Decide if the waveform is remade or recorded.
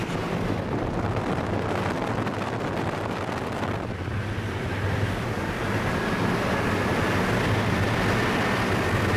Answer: recorded